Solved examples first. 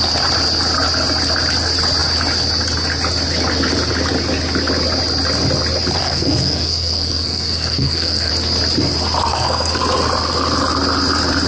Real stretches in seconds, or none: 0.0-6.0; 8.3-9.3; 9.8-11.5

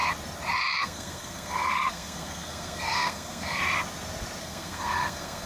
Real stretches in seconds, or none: 0.0-0.8; 3.6-4.4